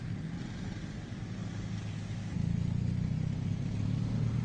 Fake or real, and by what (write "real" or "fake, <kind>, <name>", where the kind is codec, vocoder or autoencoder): real